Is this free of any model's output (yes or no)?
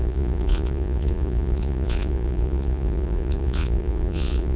no